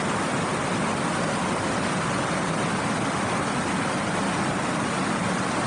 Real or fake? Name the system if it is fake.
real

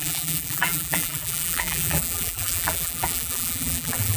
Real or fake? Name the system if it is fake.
fake, vocoder, BigVGAN v2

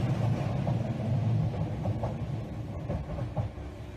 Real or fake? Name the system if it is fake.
real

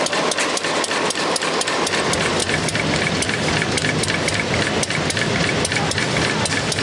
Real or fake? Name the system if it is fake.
real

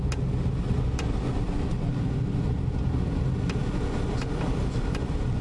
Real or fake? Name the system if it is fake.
real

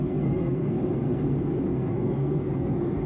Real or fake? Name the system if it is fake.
fake, codec, SNAC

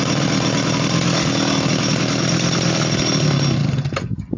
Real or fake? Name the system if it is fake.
real